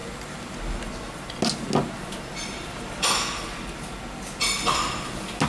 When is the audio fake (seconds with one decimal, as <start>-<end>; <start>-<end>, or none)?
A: none